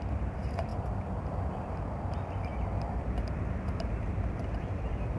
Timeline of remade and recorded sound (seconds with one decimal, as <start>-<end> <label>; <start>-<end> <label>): 0.0-5.2 remade